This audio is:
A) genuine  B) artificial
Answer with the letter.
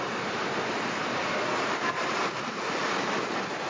B